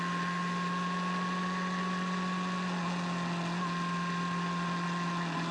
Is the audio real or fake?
real